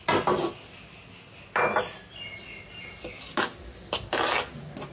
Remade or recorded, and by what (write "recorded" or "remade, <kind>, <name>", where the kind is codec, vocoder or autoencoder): recorded